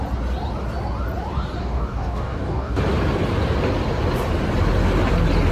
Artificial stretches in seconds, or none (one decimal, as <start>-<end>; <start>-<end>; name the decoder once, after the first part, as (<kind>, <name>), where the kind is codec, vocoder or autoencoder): 1.6-2.8 (codec, DAC)